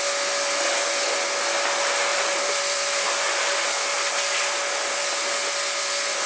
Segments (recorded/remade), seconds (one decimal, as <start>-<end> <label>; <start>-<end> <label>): 0.0-2.1 recorded; 2.1-3.1 remade; 3.1-3.9 recorded; 3.9-5.1 remade; 5.1-6.3 recorded